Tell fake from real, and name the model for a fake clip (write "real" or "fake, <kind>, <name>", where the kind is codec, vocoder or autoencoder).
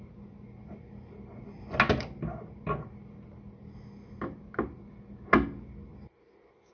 real